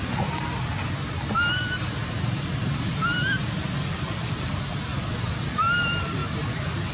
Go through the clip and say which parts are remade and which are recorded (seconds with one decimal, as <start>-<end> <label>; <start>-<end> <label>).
0.0-6.9 recorded